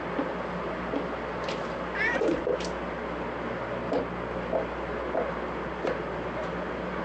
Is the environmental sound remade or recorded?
recorded